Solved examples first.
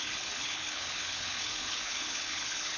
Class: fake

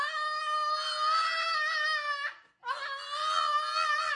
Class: real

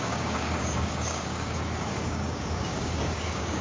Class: fake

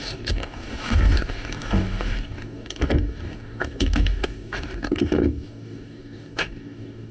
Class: fake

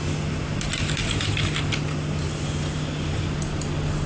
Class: real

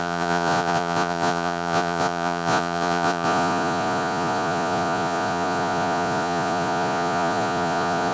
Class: fake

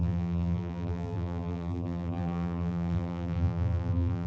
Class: fake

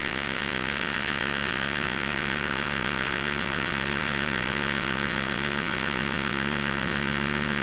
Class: fake